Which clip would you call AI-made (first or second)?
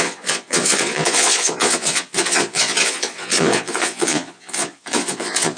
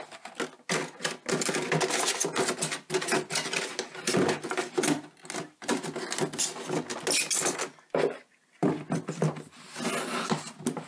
first